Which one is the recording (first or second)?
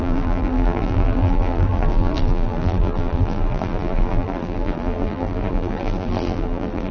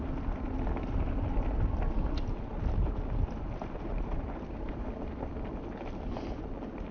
second